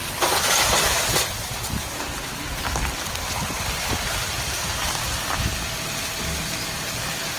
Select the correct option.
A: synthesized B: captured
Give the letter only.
B